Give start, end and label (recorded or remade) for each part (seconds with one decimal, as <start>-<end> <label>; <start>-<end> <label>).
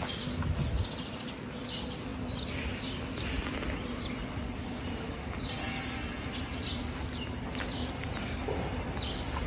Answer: 0.0-9.5 recorded